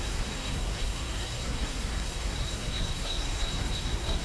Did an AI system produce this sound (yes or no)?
yes